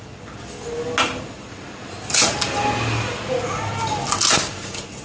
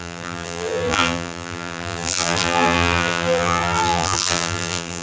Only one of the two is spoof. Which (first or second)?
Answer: second